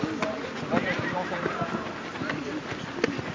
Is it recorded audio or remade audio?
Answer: recorded